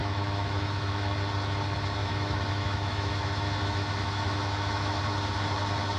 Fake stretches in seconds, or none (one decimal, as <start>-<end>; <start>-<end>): 0.0-1.1; 2.0-5.0

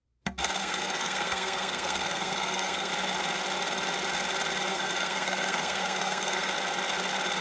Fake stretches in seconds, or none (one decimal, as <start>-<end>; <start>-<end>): 0.6-2.9; 4.7-6.5

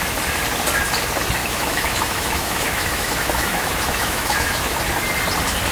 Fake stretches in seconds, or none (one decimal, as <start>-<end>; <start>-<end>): 1.4-4.8

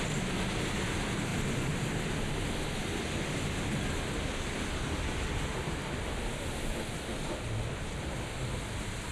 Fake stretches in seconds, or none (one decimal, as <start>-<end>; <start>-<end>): none